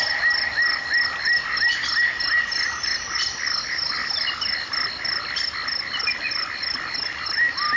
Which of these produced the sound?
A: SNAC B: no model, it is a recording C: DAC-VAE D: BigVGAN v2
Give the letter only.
B